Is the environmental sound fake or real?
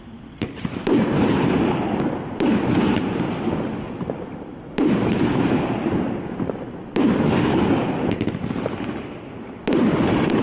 real